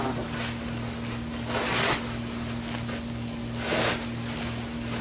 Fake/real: real